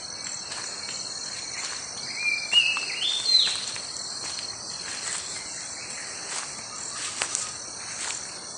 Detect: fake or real real